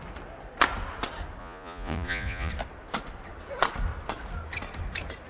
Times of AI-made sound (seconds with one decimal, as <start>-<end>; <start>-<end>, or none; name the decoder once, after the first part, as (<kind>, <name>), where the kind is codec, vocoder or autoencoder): 1.4-2.5 (vocoder, Vocos)

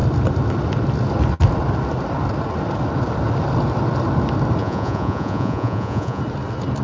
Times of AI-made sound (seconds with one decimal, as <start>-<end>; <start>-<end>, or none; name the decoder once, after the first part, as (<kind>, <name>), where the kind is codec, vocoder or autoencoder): 4.6-6.2 (vocoder, Vocos)

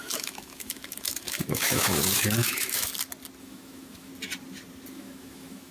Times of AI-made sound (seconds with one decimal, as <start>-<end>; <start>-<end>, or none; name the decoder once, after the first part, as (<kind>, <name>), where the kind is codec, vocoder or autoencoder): 0.0-2.9 (autoencoder, DAC-VAE); 3.4-4.1; 4.9-5.7

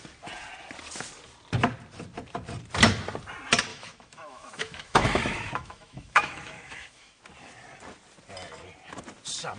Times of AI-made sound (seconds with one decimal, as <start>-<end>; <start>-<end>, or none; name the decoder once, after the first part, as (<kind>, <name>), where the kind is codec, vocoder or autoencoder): 3.7-7.2 (autoencoder, DAC-VAE)

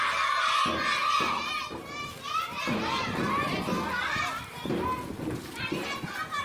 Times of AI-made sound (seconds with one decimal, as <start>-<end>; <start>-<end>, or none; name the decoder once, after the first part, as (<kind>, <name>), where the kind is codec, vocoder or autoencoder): none

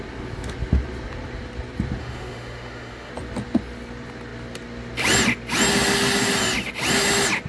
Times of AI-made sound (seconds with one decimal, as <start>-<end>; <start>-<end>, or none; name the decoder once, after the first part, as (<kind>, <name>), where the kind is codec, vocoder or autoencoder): 2.0-3.1 (autoencoder, DAC-VAE)

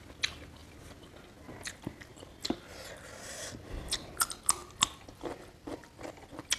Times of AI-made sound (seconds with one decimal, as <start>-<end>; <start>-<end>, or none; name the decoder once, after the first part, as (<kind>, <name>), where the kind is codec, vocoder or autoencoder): none